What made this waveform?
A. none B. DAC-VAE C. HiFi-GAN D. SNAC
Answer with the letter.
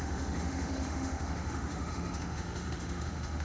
B